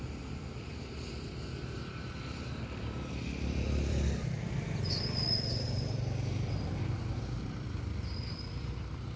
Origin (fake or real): fake